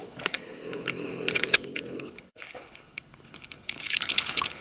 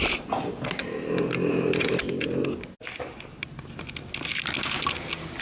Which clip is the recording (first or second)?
second